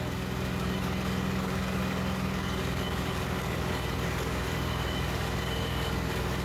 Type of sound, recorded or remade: remade